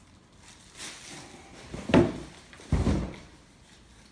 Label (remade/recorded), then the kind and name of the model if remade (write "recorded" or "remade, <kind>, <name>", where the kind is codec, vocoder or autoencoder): recorded